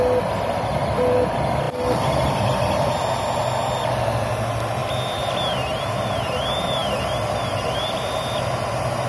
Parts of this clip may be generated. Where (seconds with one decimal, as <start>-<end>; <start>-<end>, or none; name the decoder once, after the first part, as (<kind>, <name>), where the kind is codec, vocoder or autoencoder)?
none